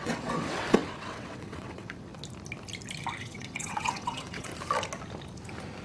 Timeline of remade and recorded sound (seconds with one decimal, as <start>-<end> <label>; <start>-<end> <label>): 0.0-2.1 remade; 2.1-3.2 recorded; 3.2-4.5 remade; 4.5-5.8 recorded